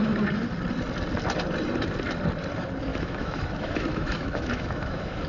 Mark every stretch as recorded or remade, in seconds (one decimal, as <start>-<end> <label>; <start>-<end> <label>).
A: 0.0-2.9 recorded; 2.9-5.3 remade